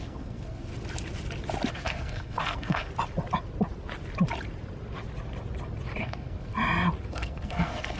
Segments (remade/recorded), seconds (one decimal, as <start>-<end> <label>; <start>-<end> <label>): 0.0-0.7 remade; 0.7-1.7 recorded; 1.7-2.9 remade; 2.9-6.0 recorded; 6.0-6.5 remade; 6.5-7.1 recorded; 7.1-8.0 remade